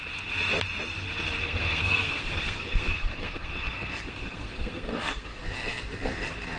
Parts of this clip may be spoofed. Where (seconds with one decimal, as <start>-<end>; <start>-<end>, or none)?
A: 1.4-5.4